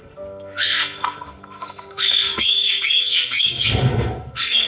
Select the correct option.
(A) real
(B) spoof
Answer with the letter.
B